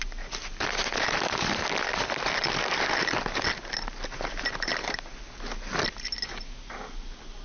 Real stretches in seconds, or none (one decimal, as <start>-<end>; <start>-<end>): 0.0-7.4